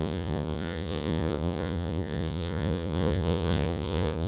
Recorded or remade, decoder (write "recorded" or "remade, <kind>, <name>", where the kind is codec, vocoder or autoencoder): remade, vocoder, Vocos